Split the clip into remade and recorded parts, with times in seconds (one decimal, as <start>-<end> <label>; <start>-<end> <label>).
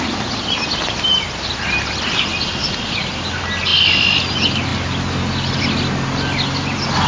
0.0-7.1 recorded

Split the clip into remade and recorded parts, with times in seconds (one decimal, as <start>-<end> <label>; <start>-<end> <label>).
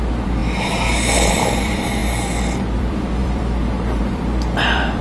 0.0-0.4 remade; 0.4-1.3 recorded; 1.3-2.0 remade; 2.0-2.6 recorded; 2.6-5.0 remade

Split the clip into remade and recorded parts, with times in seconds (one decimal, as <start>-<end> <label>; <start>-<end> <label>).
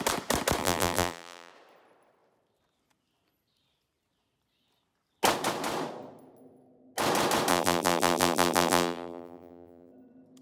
0.0-0.6 recorded; 0.6-1.5 remade; 1.5-7.5 recorded; 7.5-9.9 remade; 9.9-10.4 recorded